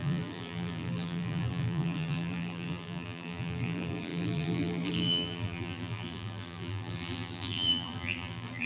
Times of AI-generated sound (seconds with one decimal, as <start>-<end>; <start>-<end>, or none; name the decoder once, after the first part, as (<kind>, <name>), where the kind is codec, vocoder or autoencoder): 0.0-8.7 (vocoder, BigVGAN v2)